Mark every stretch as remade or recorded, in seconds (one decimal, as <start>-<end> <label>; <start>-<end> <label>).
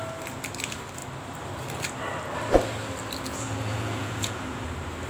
0.0-3.3 recorded; 3.3-4.4 remade; 4.4-5.1 recorded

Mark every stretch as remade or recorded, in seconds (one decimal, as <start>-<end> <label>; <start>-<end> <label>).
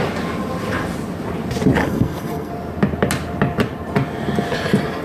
0.0-1.8 recorded; 1.8-2.5 remade; 2.5-5.0 recorded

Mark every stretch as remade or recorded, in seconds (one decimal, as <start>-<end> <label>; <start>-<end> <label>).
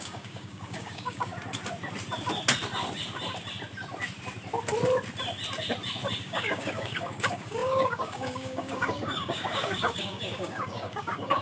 0.0-1.3 remade; 1.3-6.2 recorded; 6.2-11.4 remade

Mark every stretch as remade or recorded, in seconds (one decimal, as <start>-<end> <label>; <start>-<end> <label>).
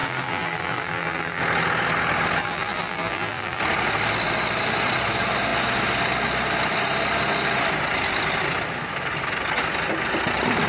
0.0-1.4 remade; 1.4-2.4 recorded; 2.4-3.6 remade; 3.6-10.7 recorded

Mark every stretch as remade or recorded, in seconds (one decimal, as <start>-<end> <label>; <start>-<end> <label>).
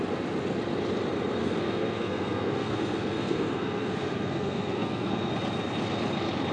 0.0-1.4 recorded; 1.4-5.3 remade; 5.3-6.5 recorded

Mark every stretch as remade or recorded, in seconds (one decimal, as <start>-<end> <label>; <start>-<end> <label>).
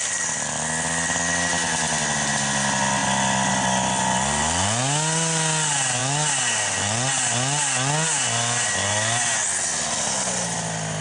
0.0-11.0 recorded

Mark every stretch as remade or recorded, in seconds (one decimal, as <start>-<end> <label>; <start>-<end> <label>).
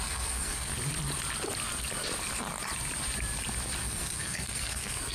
0.0-0.7 remade; 0.7-3.8 recorded; 3.8-5.1 remade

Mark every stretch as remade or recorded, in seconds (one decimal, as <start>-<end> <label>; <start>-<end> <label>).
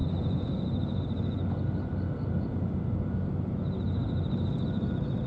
0.0-2.8 remade; 2.8-5.3 recorded